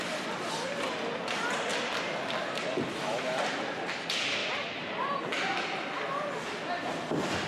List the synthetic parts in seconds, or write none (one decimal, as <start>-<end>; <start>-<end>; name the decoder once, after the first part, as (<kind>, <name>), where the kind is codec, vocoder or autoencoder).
1.7-3.7 (vocoder, BigVGAN v2)

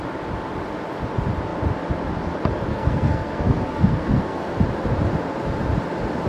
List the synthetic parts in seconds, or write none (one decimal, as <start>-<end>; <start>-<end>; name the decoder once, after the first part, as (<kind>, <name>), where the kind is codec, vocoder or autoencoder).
2.7-4.6 (codec, SNAC)

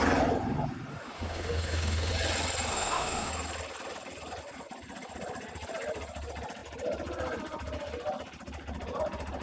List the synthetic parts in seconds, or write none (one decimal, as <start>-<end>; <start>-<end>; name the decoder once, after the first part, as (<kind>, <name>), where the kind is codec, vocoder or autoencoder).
0.9-2.1 (autoencoder, DAC-VAE); 2.7-3.3

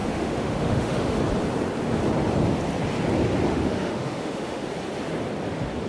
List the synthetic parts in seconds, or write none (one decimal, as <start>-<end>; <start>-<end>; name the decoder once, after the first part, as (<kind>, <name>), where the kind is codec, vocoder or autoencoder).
0.0-1.2 (autoencoder, DAC-VAE); 3.5-4.6

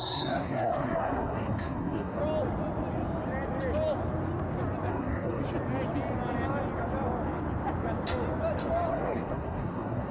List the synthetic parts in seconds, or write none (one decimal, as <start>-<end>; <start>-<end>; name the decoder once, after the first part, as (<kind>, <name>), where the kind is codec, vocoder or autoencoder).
0.0-2.2 (codec, SNAC); 4.9-5.4; 8.9-10.1